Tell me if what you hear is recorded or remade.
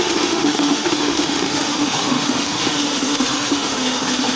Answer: remade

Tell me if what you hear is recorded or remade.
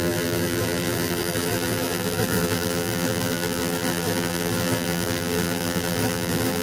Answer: remade